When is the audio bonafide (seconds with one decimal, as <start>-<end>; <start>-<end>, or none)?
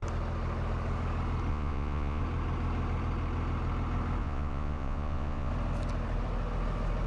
0.0-1.5; 2.2-4.2; 5.5-7.1